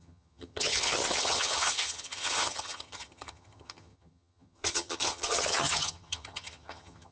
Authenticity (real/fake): fake